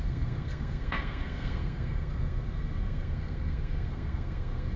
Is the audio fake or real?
fake